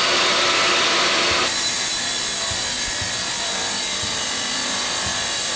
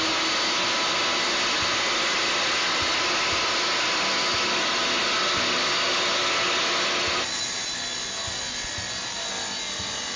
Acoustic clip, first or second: second